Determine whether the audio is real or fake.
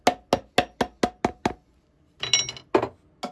real